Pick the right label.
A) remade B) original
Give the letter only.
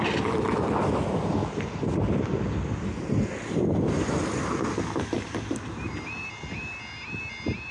B